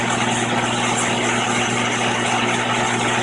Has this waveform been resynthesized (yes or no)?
no